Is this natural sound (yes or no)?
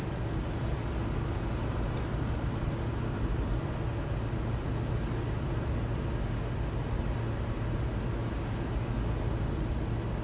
yes